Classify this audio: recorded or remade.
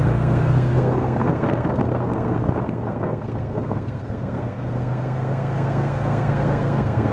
remade